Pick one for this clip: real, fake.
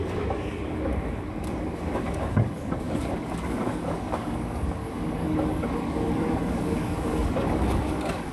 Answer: fake